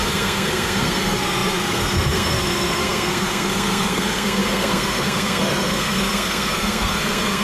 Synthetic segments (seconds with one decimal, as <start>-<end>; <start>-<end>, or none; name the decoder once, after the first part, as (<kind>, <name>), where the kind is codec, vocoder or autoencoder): 0.0-7.4 (codec, SNAC)